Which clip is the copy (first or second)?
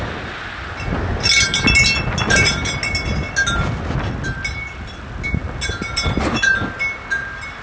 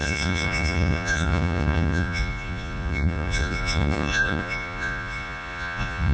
second